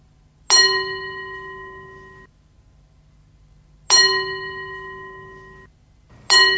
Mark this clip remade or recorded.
recorded